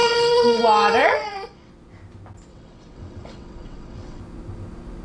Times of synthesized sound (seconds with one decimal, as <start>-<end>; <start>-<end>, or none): 0.0-0.6; 1.0-1.7; 2.5-4.2